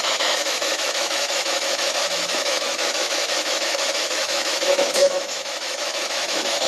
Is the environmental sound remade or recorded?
remade